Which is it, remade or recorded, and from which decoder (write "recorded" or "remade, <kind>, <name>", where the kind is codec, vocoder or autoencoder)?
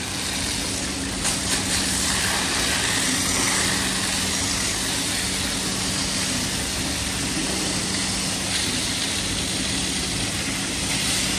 recorded